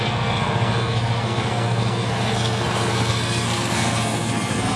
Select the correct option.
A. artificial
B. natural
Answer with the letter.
A